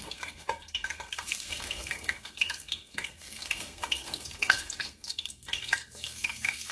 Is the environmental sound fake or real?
fake